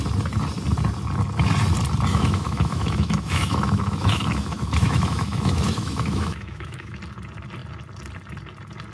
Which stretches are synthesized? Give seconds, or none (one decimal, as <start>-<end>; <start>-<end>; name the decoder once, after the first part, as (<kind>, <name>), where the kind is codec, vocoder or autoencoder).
2.1-7.0 (autoencoder, DAC-VAE)